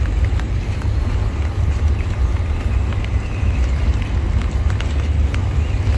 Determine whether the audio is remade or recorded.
recorded